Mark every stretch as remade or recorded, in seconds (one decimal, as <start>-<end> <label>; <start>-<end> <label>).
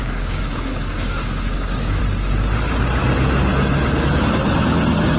0.0-2.0 remade; 2.0-5.2 recorded